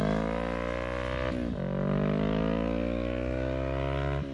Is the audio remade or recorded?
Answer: recorded